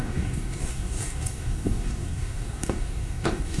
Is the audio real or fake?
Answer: fake